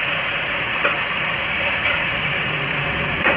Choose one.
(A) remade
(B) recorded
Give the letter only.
A